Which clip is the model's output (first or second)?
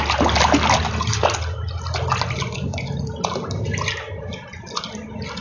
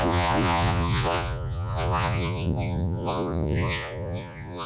second